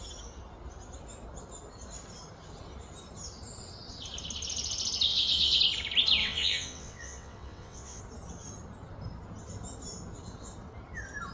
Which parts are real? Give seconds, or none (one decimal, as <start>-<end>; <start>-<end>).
0.0-5.1; 5.6-6.2; 8.0-11.3